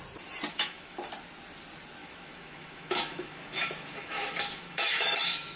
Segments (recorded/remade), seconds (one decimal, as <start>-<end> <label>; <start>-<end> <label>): 0.0-0.5 recorded; 0.5-1.0 remade; 1.0-2.0 recorded; 2.0-5.6 remade